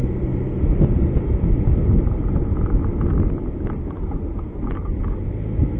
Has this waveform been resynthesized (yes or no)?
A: no